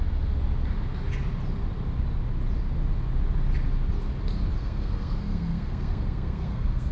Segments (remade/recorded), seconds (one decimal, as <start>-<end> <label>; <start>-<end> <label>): 0.0-4.6 recorded; 4.6-6.9 remade